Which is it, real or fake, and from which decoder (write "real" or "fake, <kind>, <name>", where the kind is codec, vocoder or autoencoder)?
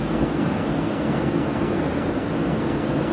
fake, codec, SNAC